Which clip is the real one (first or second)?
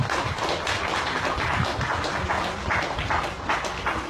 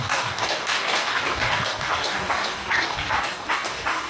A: first